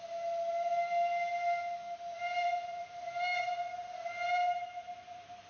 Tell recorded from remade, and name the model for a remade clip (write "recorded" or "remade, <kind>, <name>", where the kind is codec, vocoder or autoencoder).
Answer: recorded